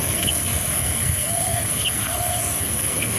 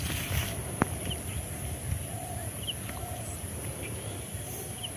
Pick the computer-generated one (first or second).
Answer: first